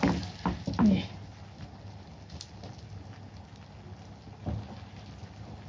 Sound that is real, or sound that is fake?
real